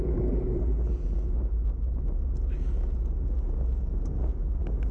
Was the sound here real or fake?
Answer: real